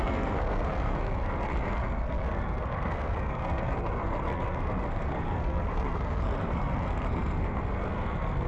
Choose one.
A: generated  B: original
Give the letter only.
A